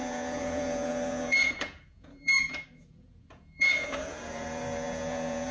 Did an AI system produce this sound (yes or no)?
yes